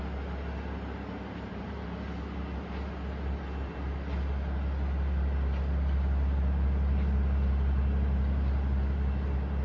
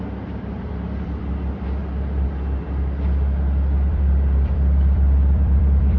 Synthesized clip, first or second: second